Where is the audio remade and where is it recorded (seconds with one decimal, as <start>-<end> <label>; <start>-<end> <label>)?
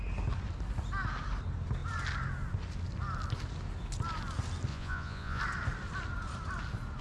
0.0-4.7 recorded; 4.7-5.4 remade; 5.4-7.0 recorded